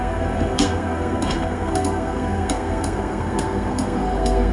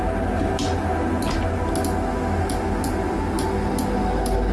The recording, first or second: second